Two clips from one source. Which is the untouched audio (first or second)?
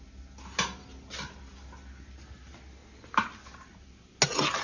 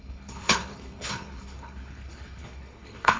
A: first